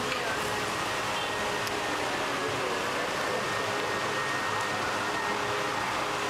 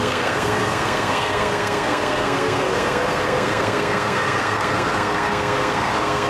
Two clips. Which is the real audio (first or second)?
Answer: first